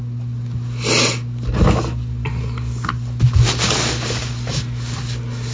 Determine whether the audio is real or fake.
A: real